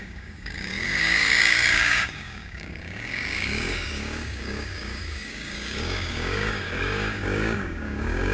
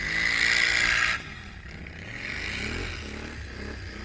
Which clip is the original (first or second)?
second